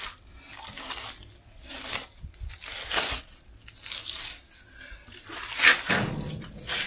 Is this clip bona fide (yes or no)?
yes